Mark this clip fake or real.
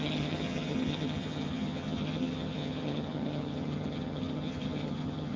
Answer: fake